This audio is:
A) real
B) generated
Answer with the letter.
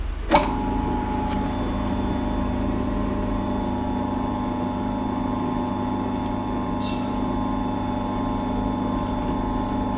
A